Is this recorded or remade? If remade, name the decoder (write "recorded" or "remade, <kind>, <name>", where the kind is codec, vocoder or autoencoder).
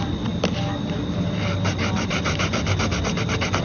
recorded